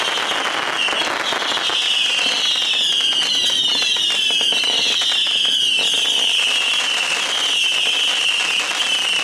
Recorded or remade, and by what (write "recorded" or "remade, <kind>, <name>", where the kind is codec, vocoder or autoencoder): recorded